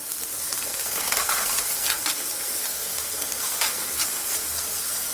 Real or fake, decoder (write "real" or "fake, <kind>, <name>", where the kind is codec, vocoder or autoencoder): fake, codec, SNAC